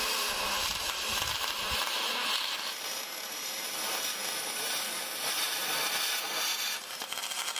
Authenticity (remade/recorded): remade